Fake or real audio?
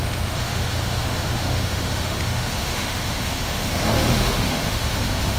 fake